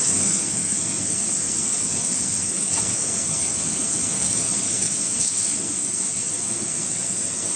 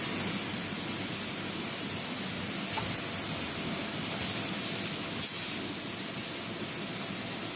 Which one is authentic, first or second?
second